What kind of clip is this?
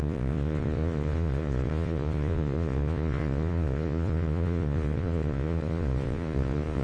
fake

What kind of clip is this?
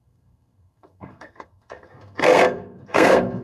fake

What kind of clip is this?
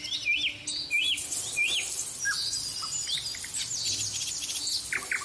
real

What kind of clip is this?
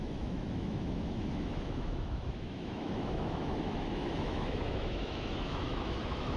fake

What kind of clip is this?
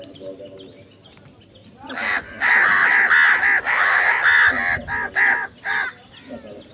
real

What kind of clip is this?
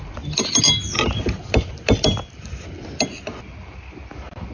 real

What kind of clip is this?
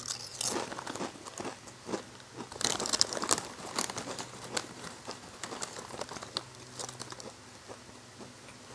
real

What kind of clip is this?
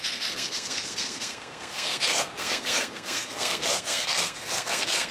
fake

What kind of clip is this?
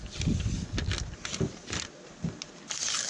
real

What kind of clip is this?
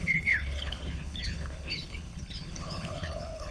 fake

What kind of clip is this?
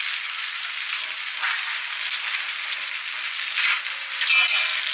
real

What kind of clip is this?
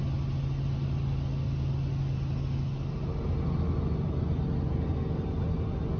real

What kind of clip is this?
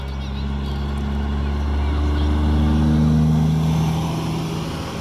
real